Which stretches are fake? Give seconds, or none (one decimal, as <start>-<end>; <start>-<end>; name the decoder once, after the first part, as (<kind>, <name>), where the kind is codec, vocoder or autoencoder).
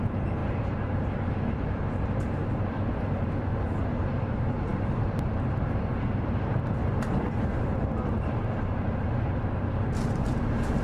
0.0-6.8 (vocoder, BigVGAN v2)